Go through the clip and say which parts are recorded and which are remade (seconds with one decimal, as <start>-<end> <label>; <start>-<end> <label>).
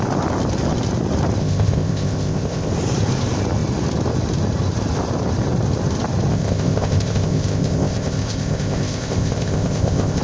0.0-1.4 recorded; 1.4-2.7 remade; 2.7-6.3 recorded; 6.3-10.2 remade